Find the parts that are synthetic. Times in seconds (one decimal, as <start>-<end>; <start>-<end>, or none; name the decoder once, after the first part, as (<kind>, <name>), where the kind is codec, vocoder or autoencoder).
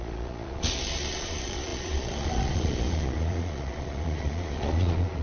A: 0.0-5.2 (vocoder, Vocos)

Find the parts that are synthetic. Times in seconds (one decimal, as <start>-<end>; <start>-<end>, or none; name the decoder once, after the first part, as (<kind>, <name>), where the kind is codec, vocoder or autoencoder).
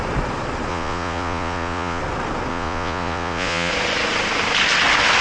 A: 0.7-2.0 (vocoder, Vocos); 2.5-3.7